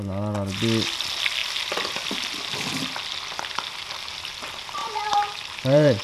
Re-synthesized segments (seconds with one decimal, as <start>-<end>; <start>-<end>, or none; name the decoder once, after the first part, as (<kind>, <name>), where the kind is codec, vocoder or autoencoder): 4.8-6.0 (vocoder, BigVGAN v2)